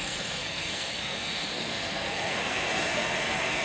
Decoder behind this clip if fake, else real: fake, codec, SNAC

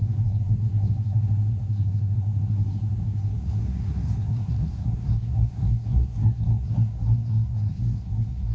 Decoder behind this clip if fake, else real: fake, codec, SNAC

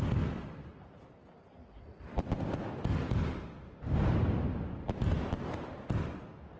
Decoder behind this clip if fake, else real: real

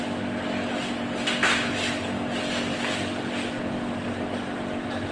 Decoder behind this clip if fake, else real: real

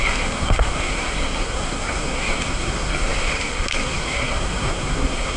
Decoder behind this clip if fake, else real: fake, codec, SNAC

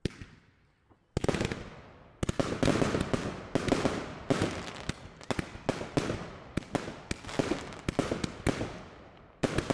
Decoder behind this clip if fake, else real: real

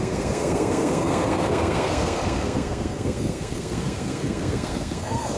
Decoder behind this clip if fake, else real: fake, codec, SNAC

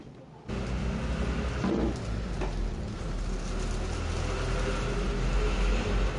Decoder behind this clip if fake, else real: real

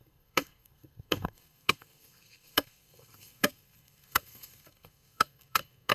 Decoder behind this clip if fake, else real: fake, codec, SNAC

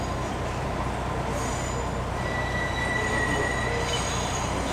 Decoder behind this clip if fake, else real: real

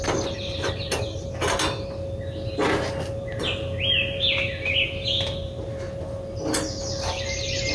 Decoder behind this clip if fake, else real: real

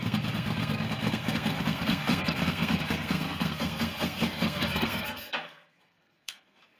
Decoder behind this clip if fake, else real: fake, codec, SNAC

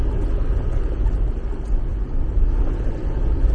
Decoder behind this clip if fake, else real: real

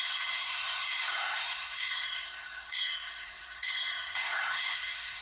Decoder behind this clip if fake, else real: fake, codec, SNAC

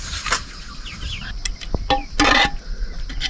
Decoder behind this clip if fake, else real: real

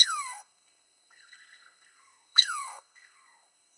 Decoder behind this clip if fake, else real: fake, codec, SNAC